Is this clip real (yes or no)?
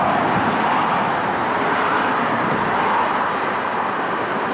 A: yes